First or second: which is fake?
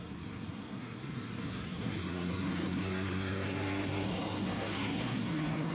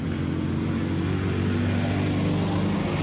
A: first